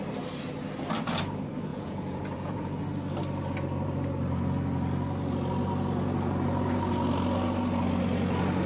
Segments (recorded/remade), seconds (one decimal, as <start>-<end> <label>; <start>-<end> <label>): 0.0-1.7 recorded; 1.7-2.8 remade; 2.8-8.7 recorded